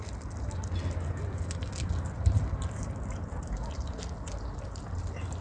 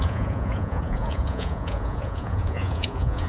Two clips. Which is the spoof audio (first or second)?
second